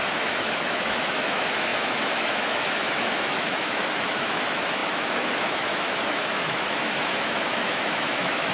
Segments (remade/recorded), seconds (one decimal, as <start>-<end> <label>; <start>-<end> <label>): 0.0-8.5 remade

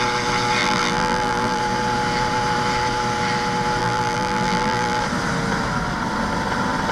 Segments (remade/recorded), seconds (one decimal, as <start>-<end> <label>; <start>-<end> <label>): 0.0-0.6 recorded; 0.6-1.6 remade; 1.6-3.8 recorded; 3.8-5.0 remade; 5.0-6.9 recorded

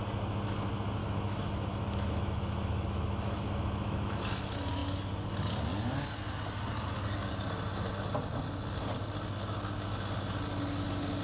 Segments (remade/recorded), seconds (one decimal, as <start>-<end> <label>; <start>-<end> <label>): 0.0-1.0 recorded; 1.0-4.2 remade; 4.2-11.2 recorded

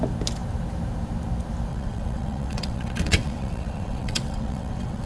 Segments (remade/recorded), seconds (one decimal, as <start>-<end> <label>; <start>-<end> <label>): 0.0-1.7 recorded; 1.7-5.1 remade

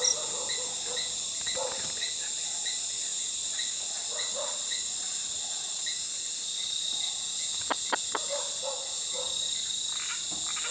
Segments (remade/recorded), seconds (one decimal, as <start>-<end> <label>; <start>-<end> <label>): 0.0-3.1 recorded; 3.1-5.8 remade; 5.8-10.7 recorded

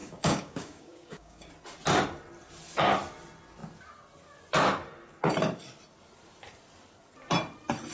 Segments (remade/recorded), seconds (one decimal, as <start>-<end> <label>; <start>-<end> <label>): 0.0-1.5 remade; 1.5-7.9 recorded

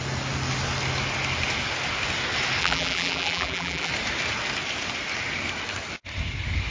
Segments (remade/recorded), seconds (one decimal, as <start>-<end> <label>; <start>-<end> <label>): 0.0-2.6 recorded; 2.6-3.9 remade; 3.9-6.7 recorded